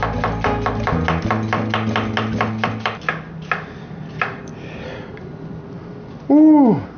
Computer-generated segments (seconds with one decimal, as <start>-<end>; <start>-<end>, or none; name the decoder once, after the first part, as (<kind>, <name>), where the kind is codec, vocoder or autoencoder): 4.5-5.2 (vocoder, BigVGAN v2)